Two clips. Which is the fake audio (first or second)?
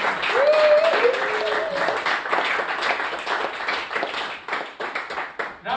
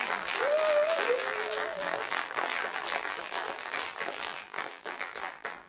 second